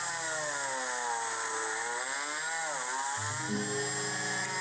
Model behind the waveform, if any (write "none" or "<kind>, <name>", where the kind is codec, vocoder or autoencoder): none